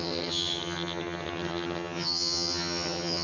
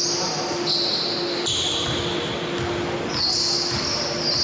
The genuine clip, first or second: second